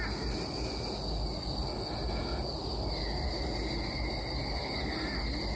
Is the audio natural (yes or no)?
yes